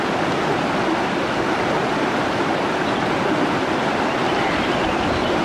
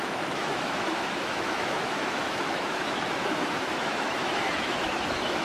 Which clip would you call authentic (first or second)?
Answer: first